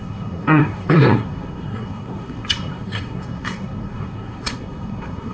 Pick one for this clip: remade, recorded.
remade